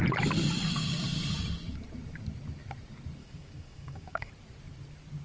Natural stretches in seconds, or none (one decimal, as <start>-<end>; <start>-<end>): 0.0-3.2; 4.3-5.2